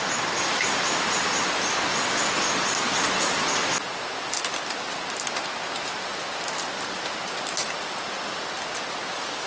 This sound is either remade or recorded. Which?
recorded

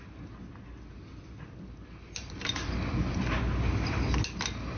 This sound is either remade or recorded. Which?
recorded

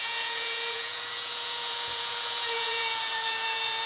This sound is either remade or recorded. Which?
remade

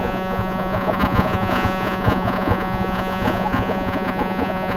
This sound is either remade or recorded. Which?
remade